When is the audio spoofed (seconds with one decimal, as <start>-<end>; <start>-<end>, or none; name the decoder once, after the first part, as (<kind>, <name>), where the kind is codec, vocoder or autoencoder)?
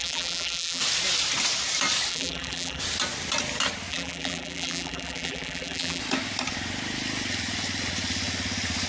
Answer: 0.0-0.8 (vocoder, BigVGAN v2); 2.1-2.8; 3.9-6.0